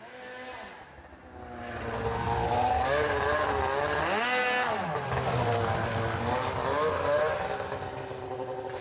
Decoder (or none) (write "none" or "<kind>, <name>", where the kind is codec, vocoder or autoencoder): none